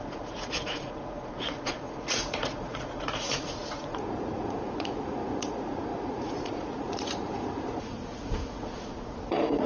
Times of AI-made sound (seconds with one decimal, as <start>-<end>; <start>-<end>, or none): 0.0-9.7